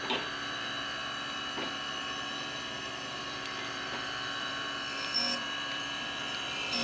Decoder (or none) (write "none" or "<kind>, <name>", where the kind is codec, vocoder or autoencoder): vocoder, BigVGAN v2